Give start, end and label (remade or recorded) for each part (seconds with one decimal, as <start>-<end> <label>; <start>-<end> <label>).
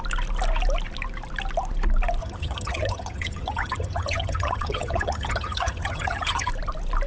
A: 0.0-2.2 recorded; 2.2-6.5 remade; 6.5-7.1 recorded